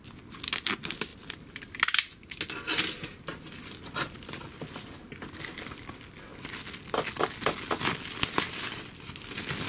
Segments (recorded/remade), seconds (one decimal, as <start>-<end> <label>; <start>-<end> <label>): 0.0-9.7 recorded